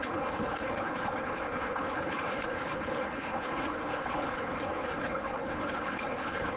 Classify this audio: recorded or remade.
remade